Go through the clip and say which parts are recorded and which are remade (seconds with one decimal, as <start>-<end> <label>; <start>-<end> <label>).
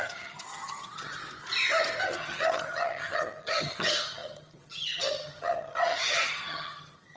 0.0-1.2 remade; 1.2-2.0 recorded; 2.0-7.2 remade